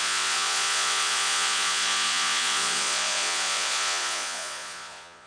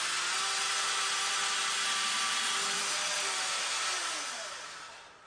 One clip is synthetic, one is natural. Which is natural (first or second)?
second